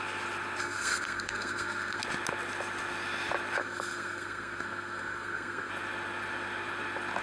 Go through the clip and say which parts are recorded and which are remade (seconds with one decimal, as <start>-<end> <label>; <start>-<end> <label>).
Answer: 0.0-0.6 recorded; 0.6-2.0 remade; 2.0-3.6 recorded; 3.6-5.7 remade; 5.7-7.2 recorded